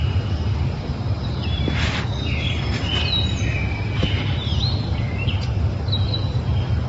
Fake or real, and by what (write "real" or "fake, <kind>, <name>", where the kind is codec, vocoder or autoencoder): real